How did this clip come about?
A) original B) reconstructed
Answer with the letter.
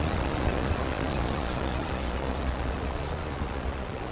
B